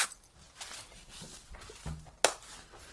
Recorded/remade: recorded